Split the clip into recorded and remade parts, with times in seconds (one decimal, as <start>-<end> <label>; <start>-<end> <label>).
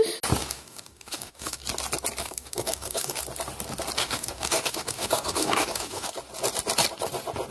0.0-0.4 recorded; 0.4-1.6 remade; 1.6-2.2 recorded; 2.2-3.2 remade; 3.2-4.0 recorded; 4.0-6.1 remade; 6.1-7.5 recorded